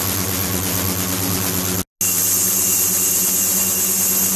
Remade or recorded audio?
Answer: recorded